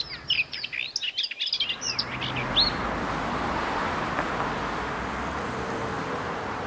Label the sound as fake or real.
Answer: real